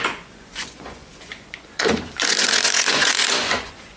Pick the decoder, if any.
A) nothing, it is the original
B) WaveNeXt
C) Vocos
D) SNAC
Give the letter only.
C